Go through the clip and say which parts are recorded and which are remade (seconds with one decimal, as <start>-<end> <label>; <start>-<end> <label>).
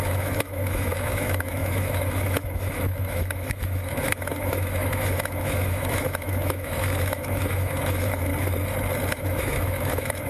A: 0.0-8.3 remade; 8.3-9.1 recorded; 9.1-10.3 remade